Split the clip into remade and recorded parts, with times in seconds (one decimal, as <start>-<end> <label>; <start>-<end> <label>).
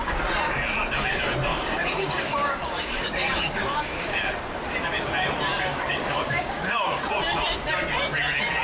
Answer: 0.0-1.5 recorded; 1.5-4.2 remade; 4.2-5.7 recorded; 5.7-7.0 remade; 7.0-8.6 recorded